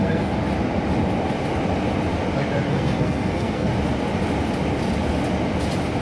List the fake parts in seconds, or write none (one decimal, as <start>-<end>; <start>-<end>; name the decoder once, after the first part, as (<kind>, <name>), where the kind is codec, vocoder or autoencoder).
0.0-0.4 (codec, SNAC); 2.7-3.7